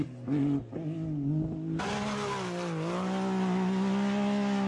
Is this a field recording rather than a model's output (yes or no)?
yes